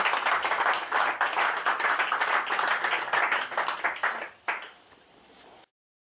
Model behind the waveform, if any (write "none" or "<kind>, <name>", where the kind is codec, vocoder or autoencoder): none